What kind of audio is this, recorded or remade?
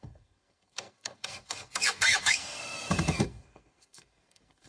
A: remade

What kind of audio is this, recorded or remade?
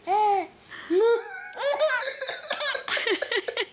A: recorded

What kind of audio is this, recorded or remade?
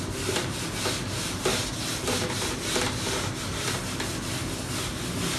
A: recorded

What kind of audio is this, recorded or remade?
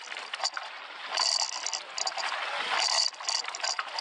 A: recorded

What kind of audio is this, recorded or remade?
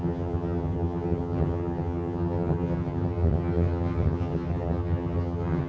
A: remade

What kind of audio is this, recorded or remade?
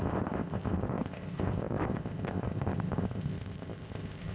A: remade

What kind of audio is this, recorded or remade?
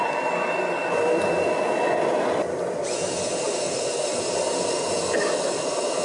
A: remade